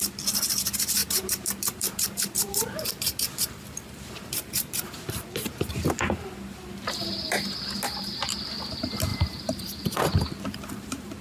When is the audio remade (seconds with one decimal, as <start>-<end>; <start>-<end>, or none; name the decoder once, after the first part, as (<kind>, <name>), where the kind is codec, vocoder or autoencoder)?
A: 1.0-5.9 (vocoder, BigVGAN v2); 9.1-11.2